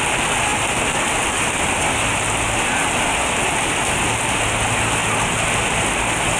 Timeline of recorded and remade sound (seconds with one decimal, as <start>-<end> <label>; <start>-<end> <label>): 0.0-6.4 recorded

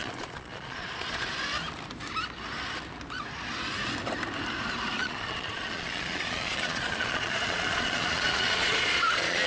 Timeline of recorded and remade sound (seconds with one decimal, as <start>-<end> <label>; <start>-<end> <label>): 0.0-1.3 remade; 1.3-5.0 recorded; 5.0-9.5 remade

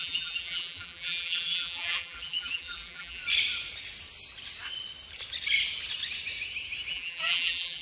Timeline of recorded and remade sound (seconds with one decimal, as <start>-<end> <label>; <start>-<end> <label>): 0.0-3.2 remade; 3.2-6.9 recorded; 6.9-7.8 remade

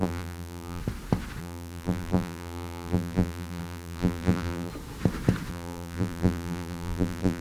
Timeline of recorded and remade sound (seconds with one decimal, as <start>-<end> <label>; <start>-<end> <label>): 0.0-0.8 remade; 0.8-1.4 recorded; 1.4-4.7 remade; 4.7-5.5 recorded; 5.5-7.4 remade

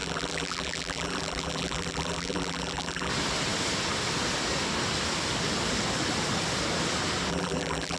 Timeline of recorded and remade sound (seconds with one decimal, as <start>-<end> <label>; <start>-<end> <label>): 0.0-3.1 remade; 3.1-7.3 recorded; 7.3-8.0 remade

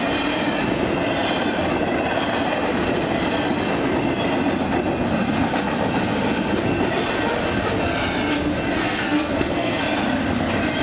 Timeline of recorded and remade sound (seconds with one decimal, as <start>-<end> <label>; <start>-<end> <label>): 0.0-8.8 recorded; 8.8-9.8 remade; 9.8-10.8 recorded